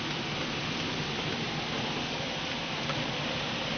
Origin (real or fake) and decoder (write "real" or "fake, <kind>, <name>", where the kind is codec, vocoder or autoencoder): real